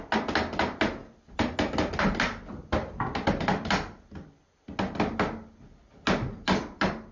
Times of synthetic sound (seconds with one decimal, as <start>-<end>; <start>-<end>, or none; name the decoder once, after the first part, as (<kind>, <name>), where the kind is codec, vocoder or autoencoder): none